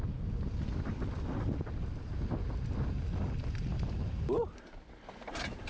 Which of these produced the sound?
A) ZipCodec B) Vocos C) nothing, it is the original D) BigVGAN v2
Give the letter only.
C